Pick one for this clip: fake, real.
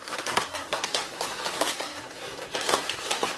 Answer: fake